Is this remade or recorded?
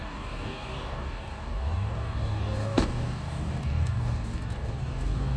remade